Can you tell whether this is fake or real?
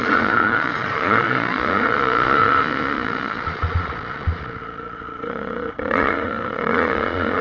fake